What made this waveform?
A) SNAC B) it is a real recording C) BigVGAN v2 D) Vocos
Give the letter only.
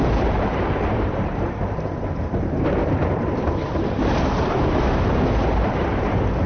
C